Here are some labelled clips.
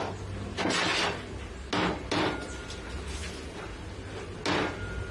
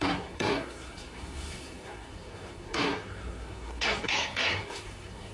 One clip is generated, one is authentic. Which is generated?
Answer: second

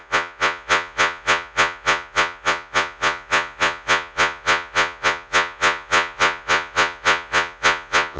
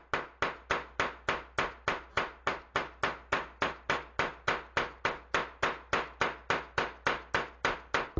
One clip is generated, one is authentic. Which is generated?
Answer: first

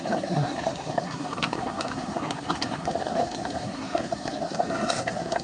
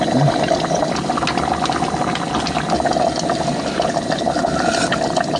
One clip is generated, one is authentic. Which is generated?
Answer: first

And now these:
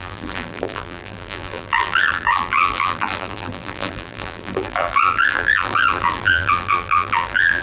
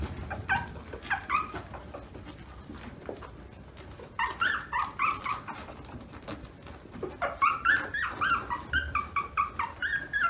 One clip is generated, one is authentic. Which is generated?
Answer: first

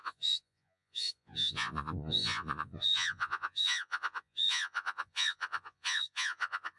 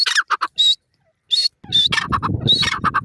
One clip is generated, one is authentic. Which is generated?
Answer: first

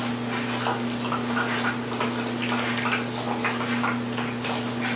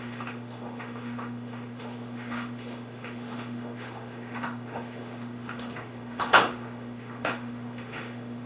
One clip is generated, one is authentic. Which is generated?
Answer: second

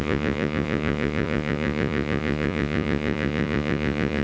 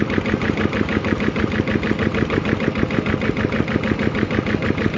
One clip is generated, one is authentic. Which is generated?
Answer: first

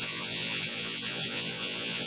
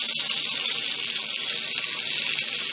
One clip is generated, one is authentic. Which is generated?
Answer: first